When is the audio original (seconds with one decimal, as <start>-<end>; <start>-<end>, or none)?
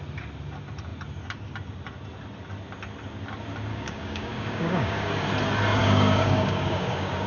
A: 0.0-3.7; 5.1-5.8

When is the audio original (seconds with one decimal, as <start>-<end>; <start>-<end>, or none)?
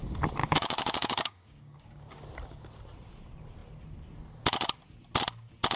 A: 0.0-0.4; 2.1-5.8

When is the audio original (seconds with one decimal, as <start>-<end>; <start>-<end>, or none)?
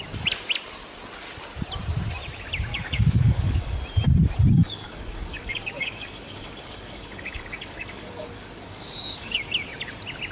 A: 0.0-2.7; 3.7-4.6; 9.4-10.3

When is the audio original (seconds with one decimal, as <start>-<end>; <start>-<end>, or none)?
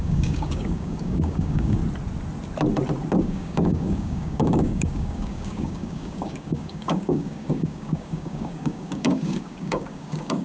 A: 1.8-3.2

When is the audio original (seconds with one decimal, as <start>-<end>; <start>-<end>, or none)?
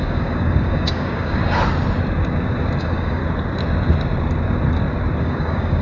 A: 1.4-2.8; 3.2-5.2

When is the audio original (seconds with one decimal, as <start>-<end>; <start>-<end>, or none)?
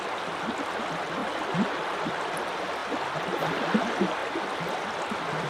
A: 0.0-5.5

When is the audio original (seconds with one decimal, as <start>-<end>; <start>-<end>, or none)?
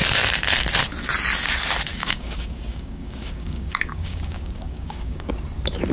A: 0.0-1.9; 5.3-5.9